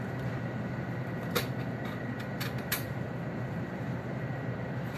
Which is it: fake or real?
fake